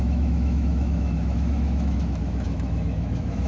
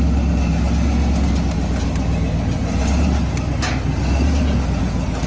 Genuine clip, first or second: second